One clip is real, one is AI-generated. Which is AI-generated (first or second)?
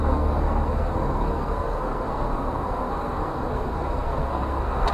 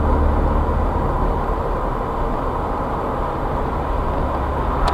first